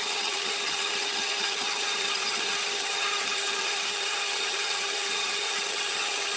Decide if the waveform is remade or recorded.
remade